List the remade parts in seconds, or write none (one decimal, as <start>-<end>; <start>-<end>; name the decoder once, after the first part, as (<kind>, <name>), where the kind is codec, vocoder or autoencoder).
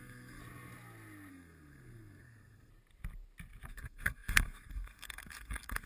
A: 0.0-0.4 (codec, SNAC); 1.3-2.7; 3.7-5.9